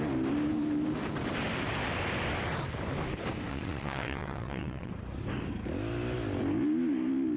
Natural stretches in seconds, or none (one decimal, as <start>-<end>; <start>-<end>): 0.0-3.5; 4.9-7.4